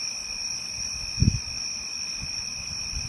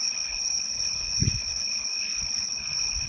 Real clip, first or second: first